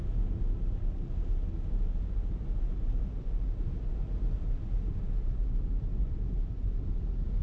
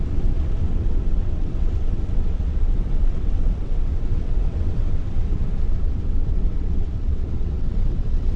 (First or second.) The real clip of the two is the first